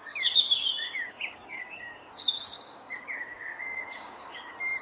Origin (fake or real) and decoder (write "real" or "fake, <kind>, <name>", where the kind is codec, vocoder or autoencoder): fake, codec, DAC